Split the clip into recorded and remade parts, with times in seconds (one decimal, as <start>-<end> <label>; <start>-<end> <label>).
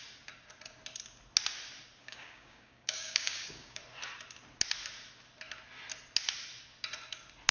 0.0-2.0 recorded; 2.0-3.8 remade; 3.8-7.5 recorded